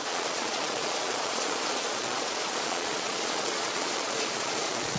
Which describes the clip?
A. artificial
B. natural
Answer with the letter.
A